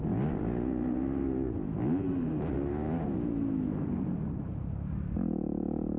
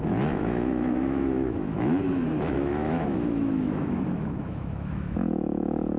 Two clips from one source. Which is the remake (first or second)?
second